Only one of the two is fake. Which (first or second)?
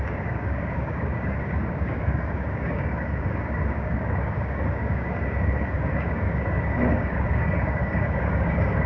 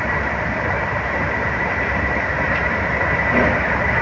first